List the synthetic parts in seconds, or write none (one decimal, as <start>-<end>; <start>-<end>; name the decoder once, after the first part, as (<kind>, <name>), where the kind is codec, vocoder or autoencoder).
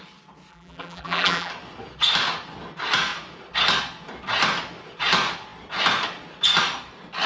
0.5-1.5 (vocoder, BigVGAN v2)